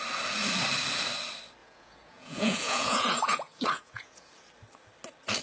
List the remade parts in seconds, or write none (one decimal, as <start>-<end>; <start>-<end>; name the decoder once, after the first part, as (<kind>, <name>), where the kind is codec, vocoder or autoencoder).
1.6-4.4 (vocoder, Vocos)